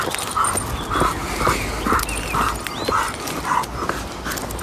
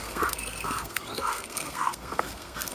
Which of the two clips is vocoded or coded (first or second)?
second